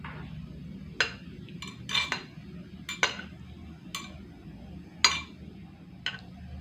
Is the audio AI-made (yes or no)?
no